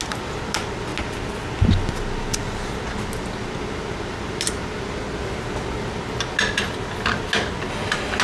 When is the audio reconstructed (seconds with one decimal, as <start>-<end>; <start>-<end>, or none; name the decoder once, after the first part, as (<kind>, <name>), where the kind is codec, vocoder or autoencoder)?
none